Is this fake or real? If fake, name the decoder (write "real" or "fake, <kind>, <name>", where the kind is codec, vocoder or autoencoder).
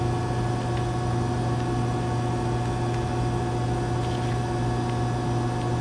real